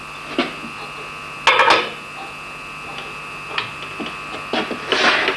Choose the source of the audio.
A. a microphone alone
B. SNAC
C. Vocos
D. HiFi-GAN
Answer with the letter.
A